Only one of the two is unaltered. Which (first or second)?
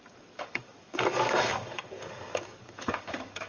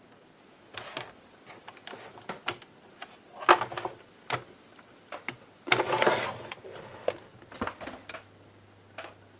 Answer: second